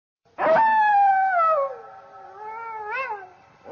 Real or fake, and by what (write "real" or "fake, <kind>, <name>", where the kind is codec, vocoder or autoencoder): real